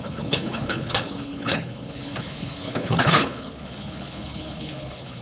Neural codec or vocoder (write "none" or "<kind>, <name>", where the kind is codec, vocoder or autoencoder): codec, HILCodec